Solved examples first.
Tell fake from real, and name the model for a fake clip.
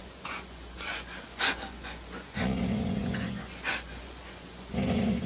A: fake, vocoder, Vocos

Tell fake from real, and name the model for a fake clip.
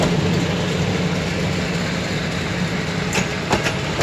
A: real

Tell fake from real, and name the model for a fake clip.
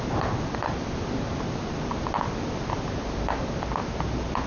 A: real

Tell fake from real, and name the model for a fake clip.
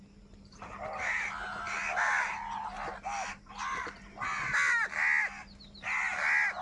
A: real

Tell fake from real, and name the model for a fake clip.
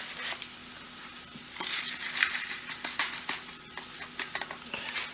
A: real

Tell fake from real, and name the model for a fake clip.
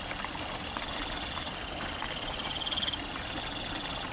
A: real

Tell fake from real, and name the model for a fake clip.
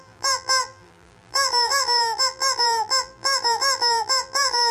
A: fake, vocoder, BigVGAN v2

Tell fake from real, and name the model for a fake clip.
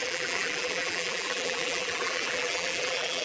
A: fake, vocoder, BigVGAN v2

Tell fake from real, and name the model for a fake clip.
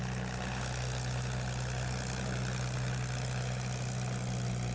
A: real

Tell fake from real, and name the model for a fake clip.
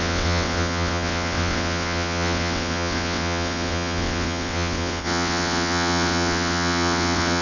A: fake, vocoder, WaveNeXt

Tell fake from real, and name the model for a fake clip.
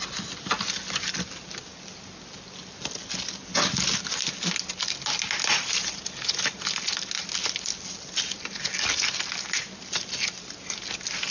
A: real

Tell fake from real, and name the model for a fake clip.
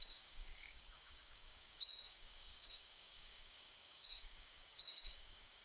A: fake, codec, DAC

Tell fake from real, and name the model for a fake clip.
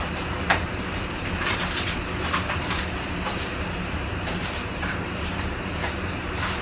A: fake, vocoder, BigVGAN v2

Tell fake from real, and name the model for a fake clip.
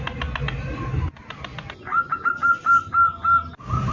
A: real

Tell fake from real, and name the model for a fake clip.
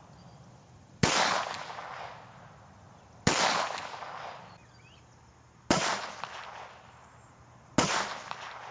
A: real